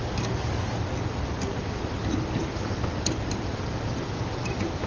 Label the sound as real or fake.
real